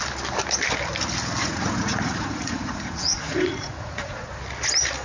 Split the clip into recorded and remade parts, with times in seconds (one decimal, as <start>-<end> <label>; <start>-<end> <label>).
0.0-1.4 recorded; 1.4-4.4 remade; 4.4-5.0 recorded

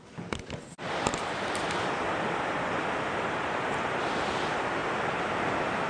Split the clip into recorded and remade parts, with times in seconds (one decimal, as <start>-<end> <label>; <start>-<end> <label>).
0.0-5.9 recorded

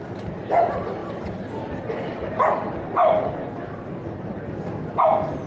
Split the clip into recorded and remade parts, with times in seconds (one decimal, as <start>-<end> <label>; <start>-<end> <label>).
0.0-5.5 recorded

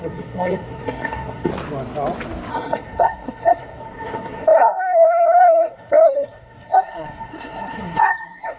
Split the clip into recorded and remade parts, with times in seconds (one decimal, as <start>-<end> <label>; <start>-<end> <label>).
0.0-1.5 remade; 1.5-2.5 recorded; 2.5-8.6 remade

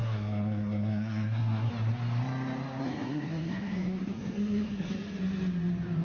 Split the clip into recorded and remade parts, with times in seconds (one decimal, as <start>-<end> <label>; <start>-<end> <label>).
0.0-1.7 remade; 1.7-2.8 recorded; 2.8-4.9 remade; 4.9-6.0 recorded

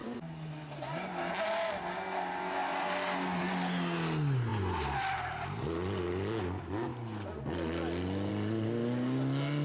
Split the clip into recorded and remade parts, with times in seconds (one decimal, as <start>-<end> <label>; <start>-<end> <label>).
0.0-9.6 recorded